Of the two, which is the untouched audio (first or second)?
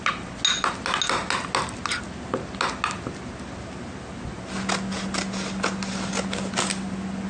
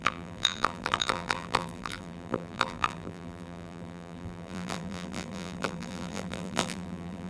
first